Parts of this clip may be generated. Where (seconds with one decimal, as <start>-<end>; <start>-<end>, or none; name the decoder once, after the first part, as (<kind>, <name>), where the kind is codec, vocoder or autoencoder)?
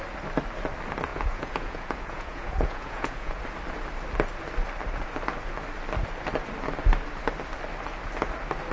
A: 1.1-3.4 (vocoder, Vocos)